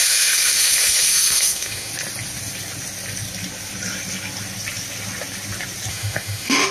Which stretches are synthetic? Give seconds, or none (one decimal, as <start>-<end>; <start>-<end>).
0.0-1.9; 5.9-6.7